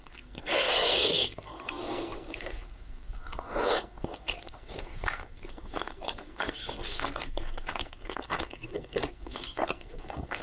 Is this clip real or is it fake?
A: fake